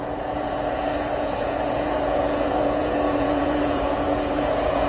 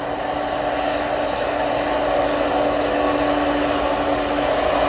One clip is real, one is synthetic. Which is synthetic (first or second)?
first